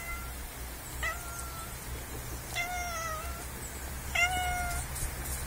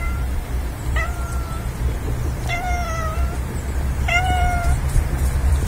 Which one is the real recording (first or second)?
first